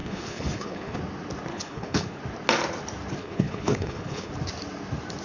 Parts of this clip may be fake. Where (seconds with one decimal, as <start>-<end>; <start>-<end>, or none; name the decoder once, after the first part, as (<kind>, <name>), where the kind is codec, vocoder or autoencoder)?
0.0-1.0 (codec, HILCodec); 1.5-2.2; 3.2-4.3